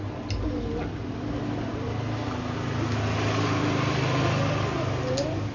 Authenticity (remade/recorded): recorded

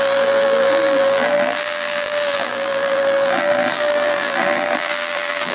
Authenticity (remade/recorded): remade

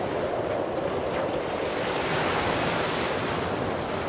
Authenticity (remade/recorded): remade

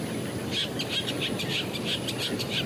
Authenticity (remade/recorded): recorded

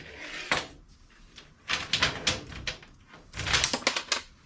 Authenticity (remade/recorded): recorded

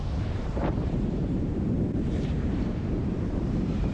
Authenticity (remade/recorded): remade